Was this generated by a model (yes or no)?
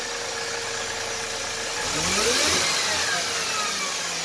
no